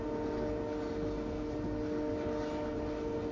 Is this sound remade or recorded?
recorded